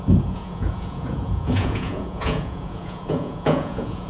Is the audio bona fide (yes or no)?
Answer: no